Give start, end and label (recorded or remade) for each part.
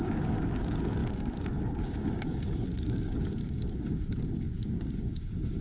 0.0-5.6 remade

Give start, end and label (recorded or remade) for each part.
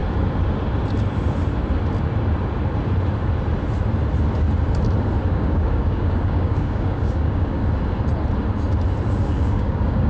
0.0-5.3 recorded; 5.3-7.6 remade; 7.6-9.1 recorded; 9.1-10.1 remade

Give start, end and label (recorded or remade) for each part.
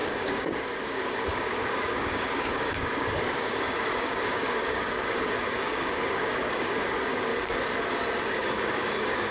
0.0-7.3 remade; 7.3-8.2 recorded; 8.2-9.3 remade